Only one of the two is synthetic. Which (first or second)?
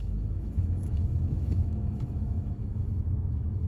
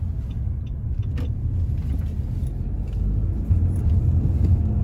first